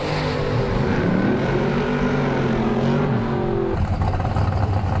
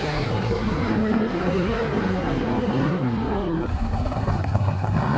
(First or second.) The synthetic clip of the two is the second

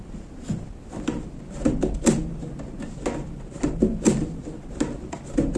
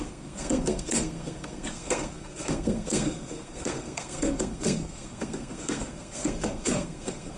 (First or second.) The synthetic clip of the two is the second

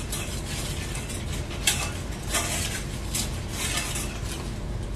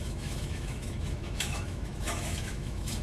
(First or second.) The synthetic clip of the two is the second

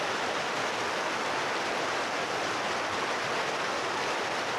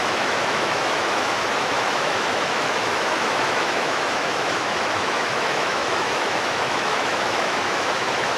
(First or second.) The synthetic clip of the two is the second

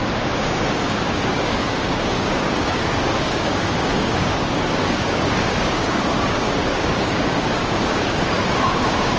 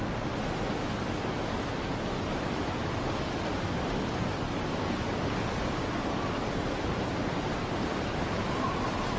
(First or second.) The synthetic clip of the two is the first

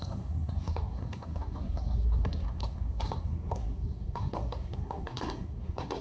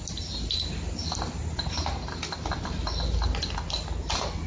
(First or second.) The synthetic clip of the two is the first